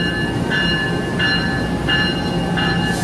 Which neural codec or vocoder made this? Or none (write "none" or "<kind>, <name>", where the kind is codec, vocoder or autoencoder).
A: none